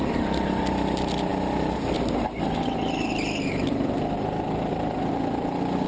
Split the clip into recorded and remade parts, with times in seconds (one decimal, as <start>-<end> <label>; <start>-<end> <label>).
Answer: 0.0-5.9 recorded

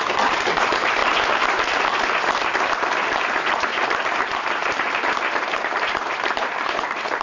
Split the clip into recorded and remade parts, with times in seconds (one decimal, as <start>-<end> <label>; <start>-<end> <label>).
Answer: 0.0-1.0 remade; 1.0-3.2 recorded; 3.2-7.2 remade

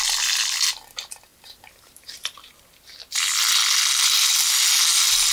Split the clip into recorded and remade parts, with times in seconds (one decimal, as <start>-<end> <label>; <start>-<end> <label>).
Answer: 0.0-5.3 recorded

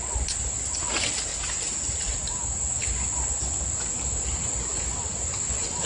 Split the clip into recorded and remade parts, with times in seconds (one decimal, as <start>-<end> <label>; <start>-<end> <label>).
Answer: 0.0-5.9 recorded

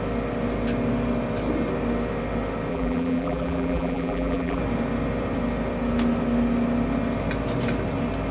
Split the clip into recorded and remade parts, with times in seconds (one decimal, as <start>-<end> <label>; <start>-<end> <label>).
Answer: 0.0-2.7 recorded; 2.7-4.6 remade; 4.6-8.3 recorded